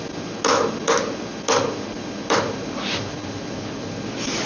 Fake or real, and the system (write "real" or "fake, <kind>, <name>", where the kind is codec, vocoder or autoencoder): real